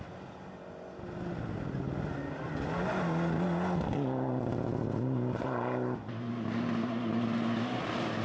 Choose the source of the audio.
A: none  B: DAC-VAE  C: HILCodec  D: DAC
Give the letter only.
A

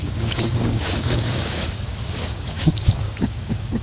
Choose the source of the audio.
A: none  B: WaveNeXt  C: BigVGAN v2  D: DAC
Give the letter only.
D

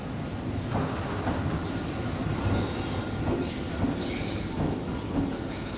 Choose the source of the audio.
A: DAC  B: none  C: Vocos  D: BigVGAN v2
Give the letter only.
B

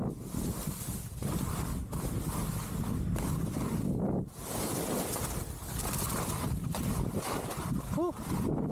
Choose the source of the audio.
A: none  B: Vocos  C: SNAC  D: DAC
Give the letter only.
A